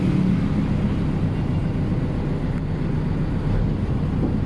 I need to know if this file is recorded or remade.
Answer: recorded